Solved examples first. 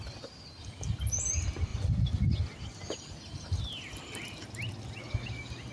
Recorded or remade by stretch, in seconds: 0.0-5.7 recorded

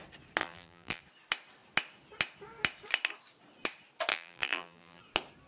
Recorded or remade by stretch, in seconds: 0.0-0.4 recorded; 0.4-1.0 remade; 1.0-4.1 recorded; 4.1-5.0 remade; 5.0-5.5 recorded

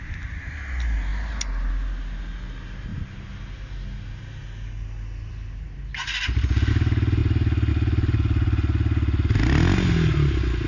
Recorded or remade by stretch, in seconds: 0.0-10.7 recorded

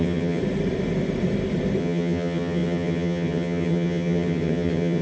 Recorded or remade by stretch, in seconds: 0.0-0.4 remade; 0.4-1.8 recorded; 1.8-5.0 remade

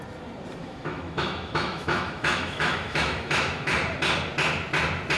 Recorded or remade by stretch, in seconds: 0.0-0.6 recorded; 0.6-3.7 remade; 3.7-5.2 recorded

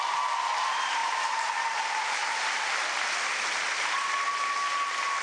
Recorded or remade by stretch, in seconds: 0.0-1.0 recorded; 1.0-2.7 remade; 2.7-5.2 recorded

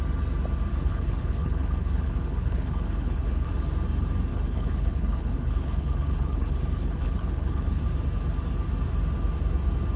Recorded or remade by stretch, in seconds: 0.0-0.7 recorded; 0.7-3.5 remade; 3.5-4.3 recorded; 4.3-7.8 remade; 7.8-10.0 recorded

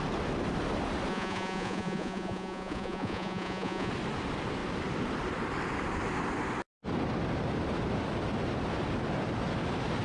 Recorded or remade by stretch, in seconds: 0.0-1.1 recorded; 1.1-3.9 remade; 3.9-10.0 recorded